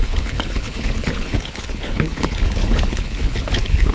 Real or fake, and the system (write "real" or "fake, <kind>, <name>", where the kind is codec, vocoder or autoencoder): fake, codec, HILCodec